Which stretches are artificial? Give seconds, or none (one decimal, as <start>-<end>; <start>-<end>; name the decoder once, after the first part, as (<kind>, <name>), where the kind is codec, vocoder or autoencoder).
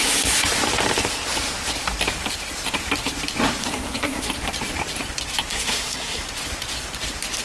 3.6-4.3 (codec, SNAC); 5.5-6.2